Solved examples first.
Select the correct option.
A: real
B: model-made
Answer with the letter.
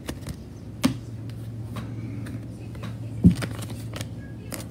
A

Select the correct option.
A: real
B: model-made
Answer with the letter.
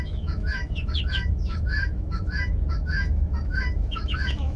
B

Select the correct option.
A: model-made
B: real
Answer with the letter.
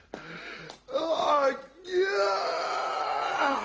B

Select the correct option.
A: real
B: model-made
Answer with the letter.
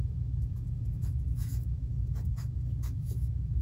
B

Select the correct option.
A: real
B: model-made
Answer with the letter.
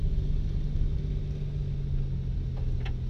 A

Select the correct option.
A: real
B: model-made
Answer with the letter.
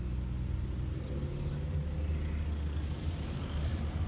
A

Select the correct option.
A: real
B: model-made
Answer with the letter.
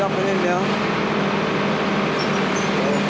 A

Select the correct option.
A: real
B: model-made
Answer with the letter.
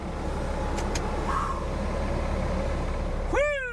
A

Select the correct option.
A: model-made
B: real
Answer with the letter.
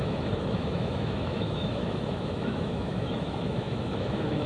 A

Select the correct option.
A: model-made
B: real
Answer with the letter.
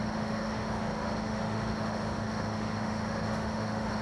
A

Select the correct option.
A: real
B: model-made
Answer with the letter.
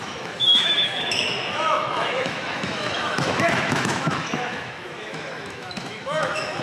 B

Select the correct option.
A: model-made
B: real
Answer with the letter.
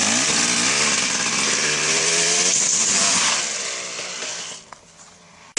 B